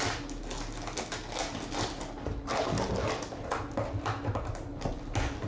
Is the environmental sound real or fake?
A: real